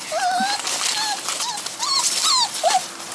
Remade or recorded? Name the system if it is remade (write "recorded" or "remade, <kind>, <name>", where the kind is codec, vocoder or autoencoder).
recorded